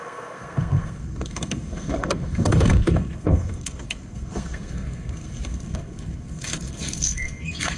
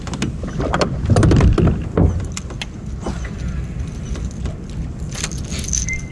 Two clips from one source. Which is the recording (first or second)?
second